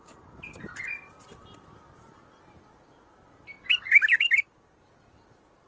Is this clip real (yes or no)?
yes